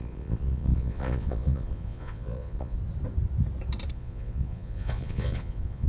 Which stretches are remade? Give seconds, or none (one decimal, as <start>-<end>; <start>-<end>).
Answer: 0.0-2.8; 3.9-5.9

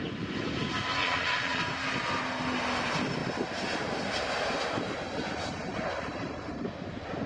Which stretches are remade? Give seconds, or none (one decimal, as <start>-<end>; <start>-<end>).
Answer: 1.0-1.6